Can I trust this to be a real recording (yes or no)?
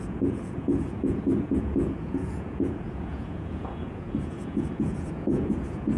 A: no